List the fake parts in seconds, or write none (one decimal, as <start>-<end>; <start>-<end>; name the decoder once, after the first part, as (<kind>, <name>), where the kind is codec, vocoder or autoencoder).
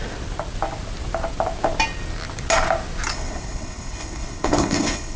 3.1-5.2 (codec, HILCodec)